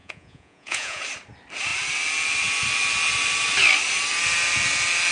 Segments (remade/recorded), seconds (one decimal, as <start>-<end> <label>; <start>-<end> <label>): 0.0-1.0 remade; 1.0-5.1 recorded